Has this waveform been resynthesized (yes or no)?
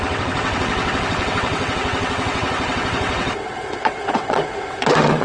yes